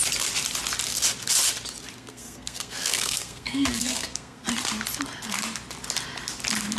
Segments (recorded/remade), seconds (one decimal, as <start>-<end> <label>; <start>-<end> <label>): 0.0-2.0 recorded; 2.0-4.5 remade; 4.5-6.8 recorded